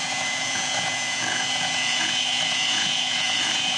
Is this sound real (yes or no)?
no